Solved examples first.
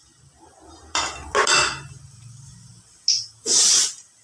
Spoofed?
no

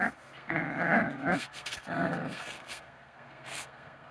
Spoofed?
yes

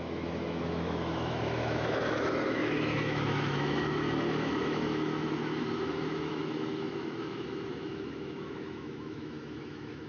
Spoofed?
yes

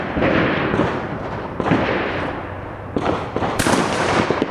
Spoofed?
yes